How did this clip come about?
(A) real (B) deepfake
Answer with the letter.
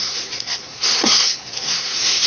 B